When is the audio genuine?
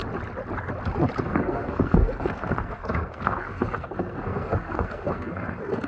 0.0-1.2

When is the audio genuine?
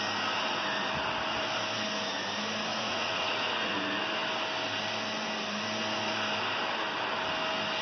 0.0-2.7; 3.7-7.8